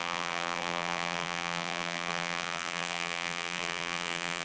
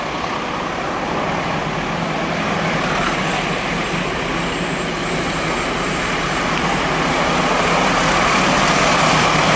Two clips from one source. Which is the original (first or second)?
second